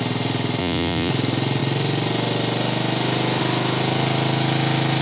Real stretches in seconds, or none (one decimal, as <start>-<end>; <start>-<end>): 0.0-0.6; 1.1-5.0